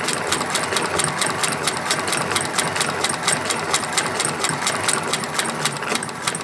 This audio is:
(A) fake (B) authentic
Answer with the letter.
B